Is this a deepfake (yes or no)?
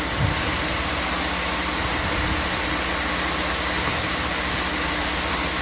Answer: no